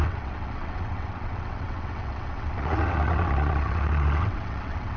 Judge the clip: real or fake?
fake